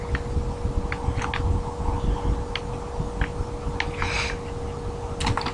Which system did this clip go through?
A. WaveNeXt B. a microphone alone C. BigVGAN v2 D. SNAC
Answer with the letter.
B